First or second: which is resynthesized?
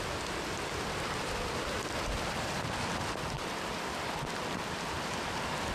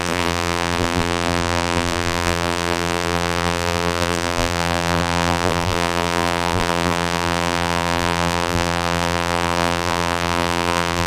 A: second